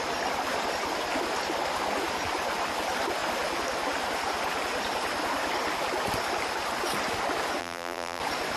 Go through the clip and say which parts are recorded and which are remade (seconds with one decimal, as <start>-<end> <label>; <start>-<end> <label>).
0.0-7.6 recorded; 7.6-8.2 remade; 8.2-8.6 recorded